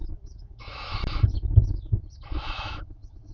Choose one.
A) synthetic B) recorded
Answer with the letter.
A